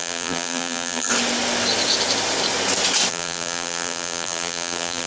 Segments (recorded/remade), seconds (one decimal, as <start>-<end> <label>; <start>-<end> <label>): 0.0-1.1 remade; 1.1-3.1 recorded; 3.1-5.1 remade